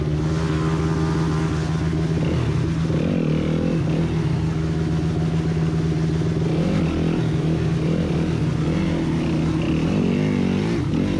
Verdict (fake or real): real